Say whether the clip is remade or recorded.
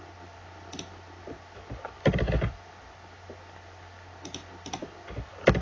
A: recorded